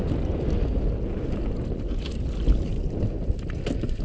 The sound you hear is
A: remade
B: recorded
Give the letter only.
B